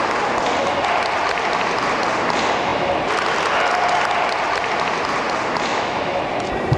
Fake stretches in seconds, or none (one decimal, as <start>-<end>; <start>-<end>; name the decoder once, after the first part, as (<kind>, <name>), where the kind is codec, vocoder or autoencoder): 5.7-6.2 (autoencoder, DAC-VAE)